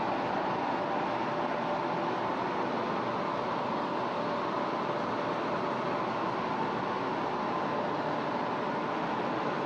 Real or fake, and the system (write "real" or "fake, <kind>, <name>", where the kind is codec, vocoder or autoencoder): real